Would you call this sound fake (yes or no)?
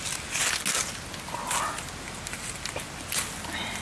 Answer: no